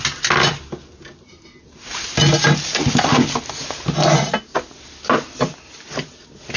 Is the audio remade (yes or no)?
no